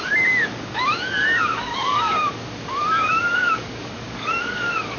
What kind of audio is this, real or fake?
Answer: fake